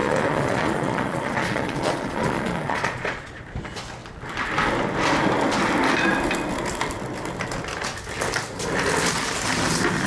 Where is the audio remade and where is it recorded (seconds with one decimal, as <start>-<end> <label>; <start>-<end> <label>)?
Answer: 0.0-3.4 remade; 3.4-10.1 recorded